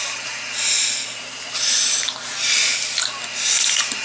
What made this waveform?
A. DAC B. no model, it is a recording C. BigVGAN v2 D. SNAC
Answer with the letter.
B